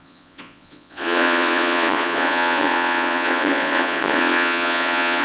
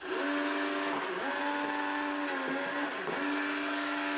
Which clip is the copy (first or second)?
first